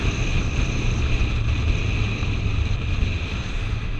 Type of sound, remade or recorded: remade